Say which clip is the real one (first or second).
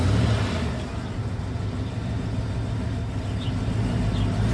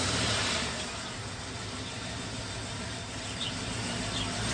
first